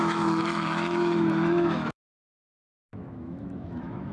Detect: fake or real fake